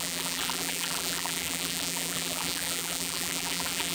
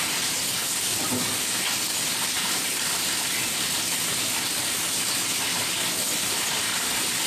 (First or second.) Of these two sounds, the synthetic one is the first